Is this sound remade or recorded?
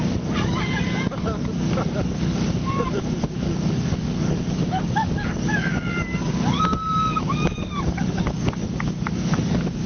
remade